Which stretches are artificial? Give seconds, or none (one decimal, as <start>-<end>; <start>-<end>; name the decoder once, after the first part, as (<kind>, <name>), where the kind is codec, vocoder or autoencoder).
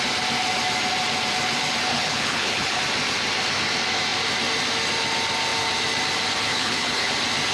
1.9-2.8 (codec, HILCodec); 6.5-7.1